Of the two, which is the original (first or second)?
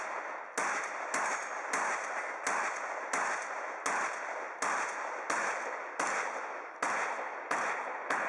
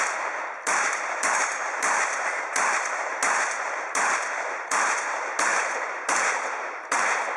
first